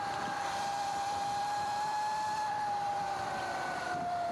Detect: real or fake fake